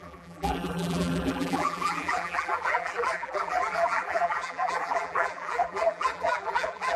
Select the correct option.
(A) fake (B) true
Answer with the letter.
A